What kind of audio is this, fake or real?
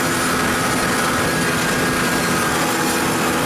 real